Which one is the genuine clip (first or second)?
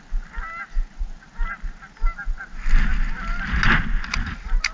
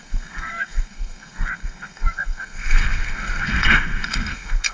first